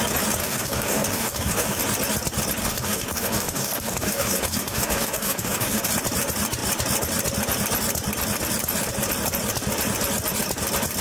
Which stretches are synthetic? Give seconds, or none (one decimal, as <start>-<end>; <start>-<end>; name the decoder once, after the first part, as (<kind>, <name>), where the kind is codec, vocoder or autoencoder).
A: 0.4-1.8 (codec, DAC); 2.6-5.9